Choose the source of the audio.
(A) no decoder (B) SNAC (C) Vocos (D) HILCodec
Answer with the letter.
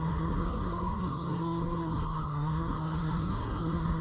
B